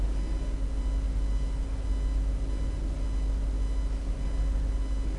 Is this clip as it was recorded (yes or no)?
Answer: yes